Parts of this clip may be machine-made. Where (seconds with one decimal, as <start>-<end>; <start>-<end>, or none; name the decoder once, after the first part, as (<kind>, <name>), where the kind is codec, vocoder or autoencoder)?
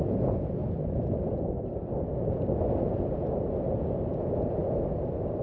0.0-0.6 (vocoder, Vocos); 3.8-4.6